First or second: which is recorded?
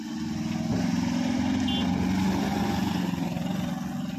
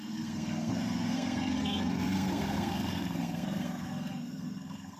first